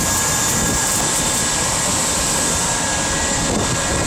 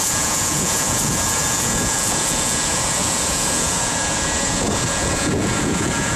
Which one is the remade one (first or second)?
second